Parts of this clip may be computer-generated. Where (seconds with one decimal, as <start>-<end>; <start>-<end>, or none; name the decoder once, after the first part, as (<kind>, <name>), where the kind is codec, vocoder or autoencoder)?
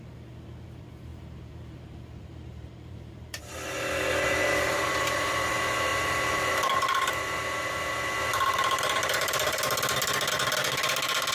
1.1-3.4 (vocoder, BigVGAN v2); 4.4-5.3; 8.3-9.6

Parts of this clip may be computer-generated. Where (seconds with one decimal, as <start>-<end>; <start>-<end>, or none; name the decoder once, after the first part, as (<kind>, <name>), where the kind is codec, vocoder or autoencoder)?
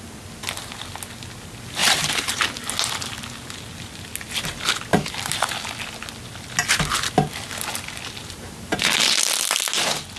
1.8-2.3 (vocoder, BigVGAN v2); 4.9-5.6; 8.2-9.1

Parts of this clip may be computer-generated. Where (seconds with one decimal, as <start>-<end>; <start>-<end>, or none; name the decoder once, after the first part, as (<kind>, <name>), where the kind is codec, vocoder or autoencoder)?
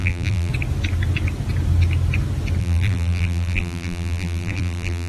0.0-0.5 (vocoder, BigVGAN v2); 2.6-5.1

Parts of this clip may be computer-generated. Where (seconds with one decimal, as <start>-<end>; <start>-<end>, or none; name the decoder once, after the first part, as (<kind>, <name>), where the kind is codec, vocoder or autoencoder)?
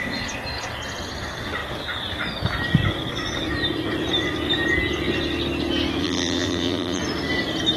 6.0-7.0 (vocoder, BigVGAN v2)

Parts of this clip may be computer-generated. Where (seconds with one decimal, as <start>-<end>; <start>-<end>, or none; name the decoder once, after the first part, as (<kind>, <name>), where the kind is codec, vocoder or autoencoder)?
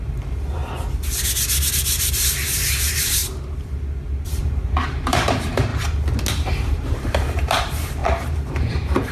0.0-0.6 (vocoder, BigVGAN v2); 1.7-3.2; 4.3-5.7; 6.3-9.1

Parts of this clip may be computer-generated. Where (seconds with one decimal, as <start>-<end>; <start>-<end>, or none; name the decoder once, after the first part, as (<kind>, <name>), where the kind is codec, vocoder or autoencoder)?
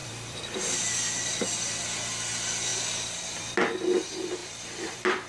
0.0-1.8 (vocoder, BigVGAN v2); 4.4-5.3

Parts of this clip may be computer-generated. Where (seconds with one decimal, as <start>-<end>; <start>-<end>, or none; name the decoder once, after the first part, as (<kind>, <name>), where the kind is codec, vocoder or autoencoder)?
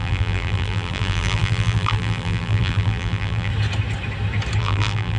0.0-3.5 (vocoder, BigVGAN v2); 4.6-5.2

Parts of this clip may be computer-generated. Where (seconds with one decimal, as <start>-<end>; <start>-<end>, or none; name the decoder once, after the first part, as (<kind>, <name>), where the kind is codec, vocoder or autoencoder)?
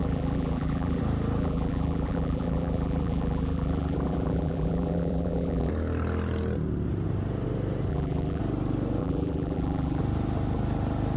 0.0-1.0 (vocoder, BigVGAN v2); 1.4-5.7; 7.9-8.4; 9.0-10.0